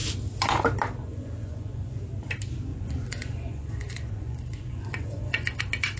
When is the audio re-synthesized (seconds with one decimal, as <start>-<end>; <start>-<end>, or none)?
1.0-2.0; 2.7-5.6

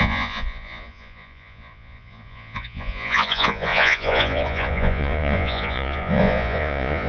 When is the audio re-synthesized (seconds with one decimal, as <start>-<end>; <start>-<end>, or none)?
0.0-7.1